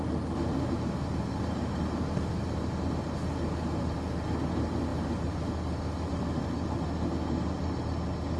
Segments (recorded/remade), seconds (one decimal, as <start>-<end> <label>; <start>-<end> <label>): 0.0-8.4 recorded